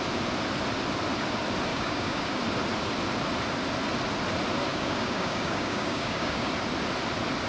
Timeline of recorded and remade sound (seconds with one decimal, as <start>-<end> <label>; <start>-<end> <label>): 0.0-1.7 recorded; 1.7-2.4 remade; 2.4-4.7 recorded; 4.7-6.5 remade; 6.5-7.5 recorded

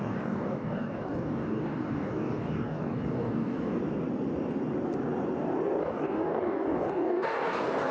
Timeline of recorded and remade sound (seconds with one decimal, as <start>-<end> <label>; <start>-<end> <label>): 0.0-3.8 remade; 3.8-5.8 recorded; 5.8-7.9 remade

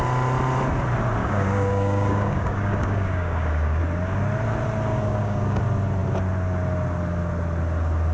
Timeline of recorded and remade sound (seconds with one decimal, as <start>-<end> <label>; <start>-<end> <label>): 0.0-1.2 recorded; 1.2-3.8 remade; 3.8-4.9 recorded; 4.9-5.6 remade; 5.6-8.1 recorded